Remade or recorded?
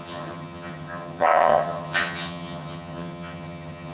remade